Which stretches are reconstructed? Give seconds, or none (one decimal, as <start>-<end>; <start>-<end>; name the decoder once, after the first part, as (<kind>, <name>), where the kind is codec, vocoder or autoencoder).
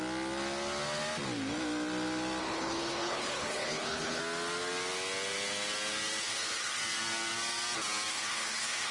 2.4-4.2 (codec, HILCodec); 6.2-6.8; 8.1-8.9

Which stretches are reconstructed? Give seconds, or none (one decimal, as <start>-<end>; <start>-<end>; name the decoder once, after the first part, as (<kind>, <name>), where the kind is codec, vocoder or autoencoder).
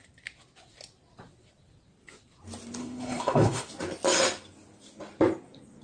2.8-3.7 (codec, HILCodec)